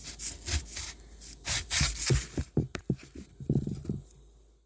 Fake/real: real